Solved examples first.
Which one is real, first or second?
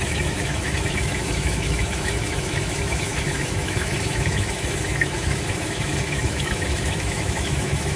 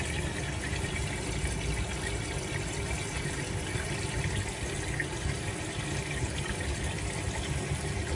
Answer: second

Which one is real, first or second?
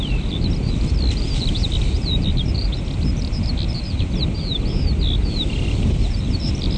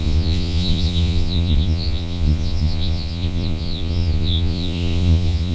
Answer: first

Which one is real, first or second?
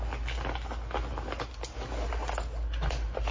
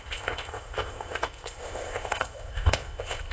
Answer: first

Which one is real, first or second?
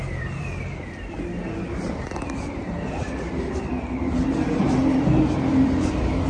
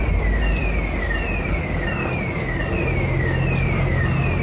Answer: second